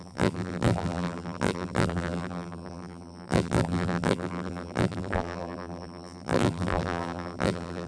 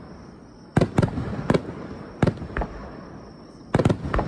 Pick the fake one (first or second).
first